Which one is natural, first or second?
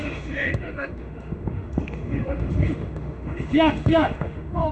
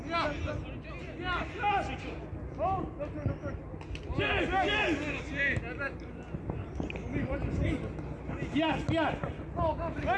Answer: second